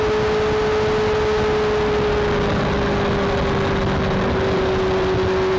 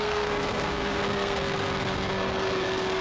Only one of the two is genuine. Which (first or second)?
first